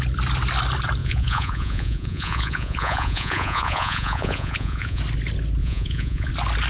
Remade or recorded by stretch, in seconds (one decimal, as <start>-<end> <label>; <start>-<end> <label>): 0.0-1.0 recorded; 1.0-5.0 remade; 5.0-5.6 recorded; 5.6-6.3 remade; 6.3-6.7 recorded